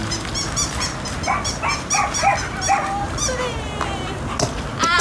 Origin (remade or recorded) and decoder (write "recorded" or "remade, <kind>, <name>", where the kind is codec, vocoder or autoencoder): recorded